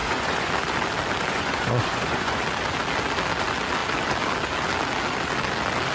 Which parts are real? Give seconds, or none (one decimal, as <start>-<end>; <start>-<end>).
0.5-1.3; 2.4-5.9